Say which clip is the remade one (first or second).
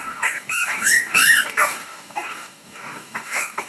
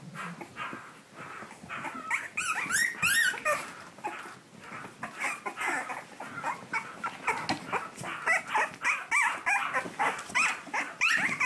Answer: first